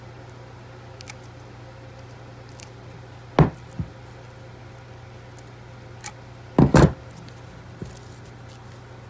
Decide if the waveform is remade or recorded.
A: recorded